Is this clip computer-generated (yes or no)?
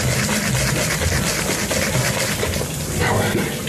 no